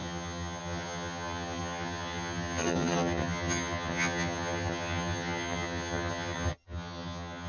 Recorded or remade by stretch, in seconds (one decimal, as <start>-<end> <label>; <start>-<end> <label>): 0.0-7.5 remade